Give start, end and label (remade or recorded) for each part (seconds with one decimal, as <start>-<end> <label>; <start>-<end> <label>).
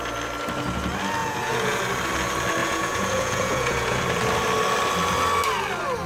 0.0-1.2 recorded; 1.2-1.8 remade; 1.8-2.6 recorded; 2.6-4.0 remade; 4.0-6.1 recorded